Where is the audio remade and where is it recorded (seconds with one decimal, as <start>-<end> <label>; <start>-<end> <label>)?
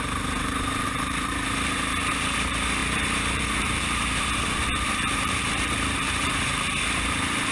0.0-7.5 remade